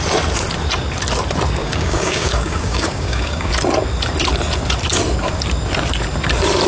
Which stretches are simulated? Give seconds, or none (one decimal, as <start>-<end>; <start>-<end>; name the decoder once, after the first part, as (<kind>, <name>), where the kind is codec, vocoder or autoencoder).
1.6-3.5 (codec, DAC)

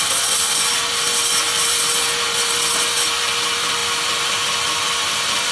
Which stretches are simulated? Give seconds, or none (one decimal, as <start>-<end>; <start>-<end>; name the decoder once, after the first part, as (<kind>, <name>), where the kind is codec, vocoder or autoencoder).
none

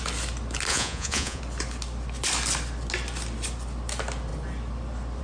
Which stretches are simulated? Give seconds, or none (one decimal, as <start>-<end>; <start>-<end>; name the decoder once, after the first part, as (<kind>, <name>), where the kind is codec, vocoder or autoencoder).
0.7-1.4 (vocoder, Vocos)

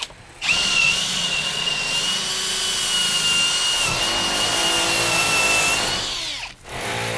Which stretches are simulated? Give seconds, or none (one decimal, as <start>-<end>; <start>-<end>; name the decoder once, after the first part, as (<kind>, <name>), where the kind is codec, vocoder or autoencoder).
0.4-1.7 (vocoder, Vocos)

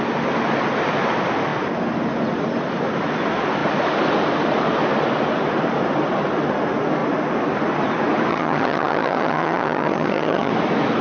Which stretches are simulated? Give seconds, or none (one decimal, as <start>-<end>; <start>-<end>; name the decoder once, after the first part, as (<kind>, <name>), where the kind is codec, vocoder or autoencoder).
8.3-10.5 (vocoder, HiFi-GAN)

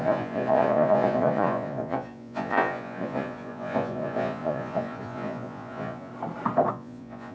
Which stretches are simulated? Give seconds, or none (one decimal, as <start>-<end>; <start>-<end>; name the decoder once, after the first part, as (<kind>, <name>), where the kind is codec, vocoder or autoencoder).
0.0-6.1 (vocoder, Vocos); 6.7-7.3

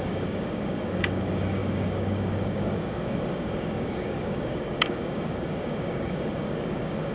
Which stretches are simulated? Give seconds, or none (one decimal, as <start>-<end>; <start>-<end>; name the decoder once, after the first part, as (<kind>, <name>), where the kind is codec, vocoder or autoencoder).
0.0-7.1 (codec, DAC)

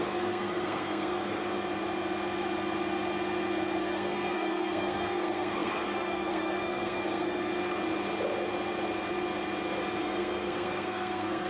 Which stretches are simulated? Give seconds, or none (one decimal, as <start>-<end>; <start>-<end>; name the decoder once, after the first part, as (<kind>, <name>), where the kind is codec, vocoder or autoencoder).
0.0-1.4 (codec, SNAC); 3.8-7.5; 10.0-11.5